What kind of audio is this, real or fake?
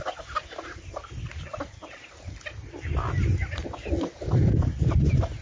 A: real